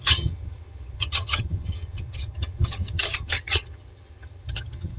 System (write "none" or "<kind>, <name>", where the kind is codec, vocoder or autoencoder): vocoder, HiFi-GAN